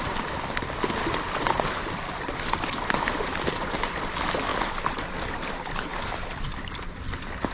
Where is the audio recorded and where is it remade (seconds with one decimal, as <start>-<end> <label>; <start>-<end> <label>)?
0.0-7.5 recorded